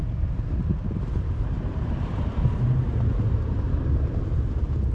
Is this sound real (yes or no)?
yes